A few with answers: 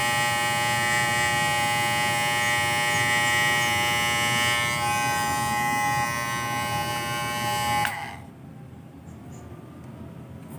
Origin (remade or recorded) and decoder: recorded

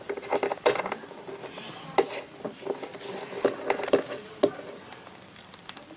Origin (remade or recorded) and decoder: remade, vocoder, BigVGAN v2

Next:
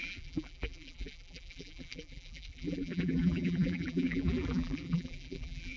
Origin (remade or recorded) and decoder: remade, vocoder, BigVGAN v2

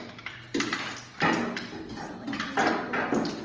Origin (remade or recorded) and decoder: recorded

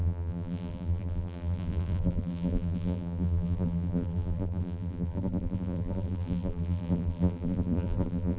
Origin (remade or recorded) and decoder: remade, vocoder, BigVGAN v2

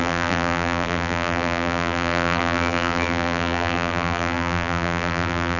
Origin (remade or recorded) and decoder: remade, vocoder, BigVGAN v2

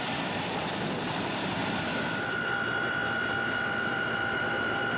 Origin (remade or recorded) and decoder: remade, vocoder, BigVGAN v2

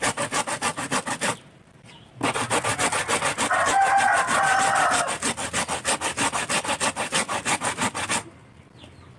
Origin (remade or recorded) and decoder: recorded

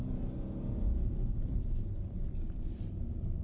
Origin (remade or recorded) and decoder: remade, vocoder, BigVGAN v2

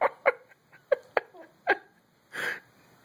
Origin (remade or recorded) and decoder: recorded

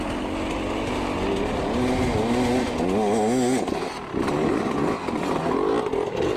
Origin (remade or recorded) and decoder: recorded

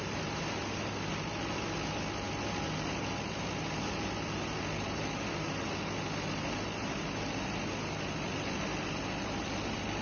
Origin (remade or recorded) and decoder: recorded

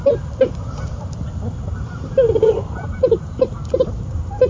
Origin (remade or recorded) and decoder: remade, vocoder, BigVGAN v2